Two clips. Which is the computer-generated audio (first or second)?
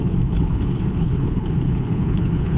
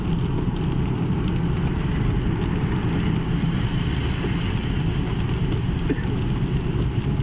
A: first